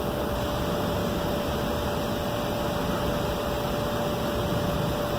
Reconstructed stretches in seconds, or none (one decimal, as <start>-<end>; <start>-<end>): none